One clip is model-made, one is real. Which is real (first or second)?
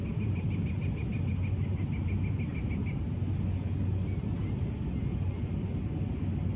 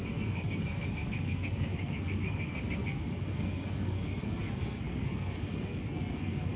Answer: first